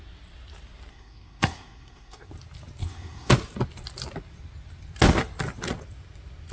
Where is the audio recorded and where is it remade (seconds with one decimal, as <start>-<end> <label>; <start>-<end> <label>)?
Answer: 0.0-0.9 recorded; 0.9-2.3 remade; 2.3-2.8 recorded; 2.8-3.3 remade; 3.3-6.5 recorded